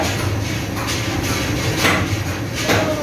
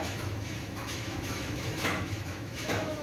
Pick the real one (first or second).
first